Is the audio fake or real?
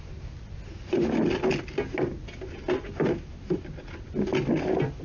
real